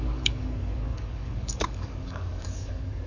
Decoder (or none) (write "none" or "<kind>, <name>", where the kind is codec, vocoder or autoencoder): codec, DAC